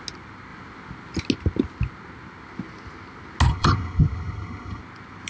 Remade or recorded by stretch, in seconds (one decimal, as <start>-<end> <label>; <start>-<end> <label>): 0.0-3.5 recorded; 3.5-4.8 remade; 4.8-5.3 recorded